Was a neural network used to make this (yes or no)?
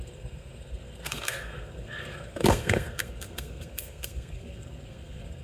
yes